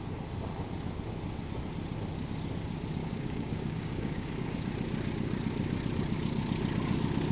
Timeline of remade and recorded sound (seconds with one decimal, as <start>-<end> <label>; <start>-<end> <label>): 0.0-3.0 recorded; 3.0-4.3 remade; 4.3-7.3 recorded